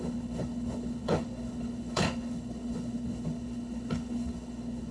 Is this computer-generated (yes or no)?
yes